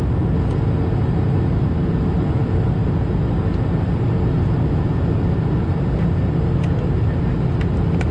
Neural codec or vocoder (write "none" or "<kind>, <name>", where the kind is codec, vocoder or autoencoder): none